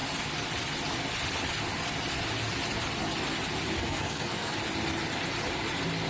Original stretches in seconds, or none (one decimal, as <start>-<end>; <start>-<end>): 0.0-3.8; 4.5-6.1